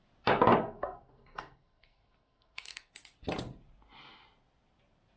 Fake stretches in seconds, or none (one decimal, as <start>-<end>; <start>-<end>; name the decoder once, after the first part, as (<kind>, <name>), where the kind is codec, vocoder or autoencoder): 0.6-2.9 (codec, SNAC)